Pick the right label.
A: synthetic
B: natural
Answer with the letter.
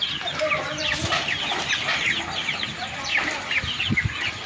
B